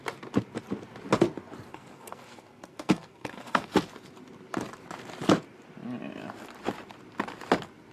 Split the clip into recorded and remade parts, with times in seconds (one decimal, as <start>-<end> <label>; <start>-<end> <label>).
0.0-1.7 recorded; 1.7-3.7 remade; 3.7-7.9 recorded